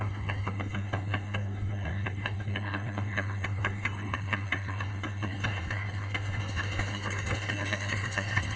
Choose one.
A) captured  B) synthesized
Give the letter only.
B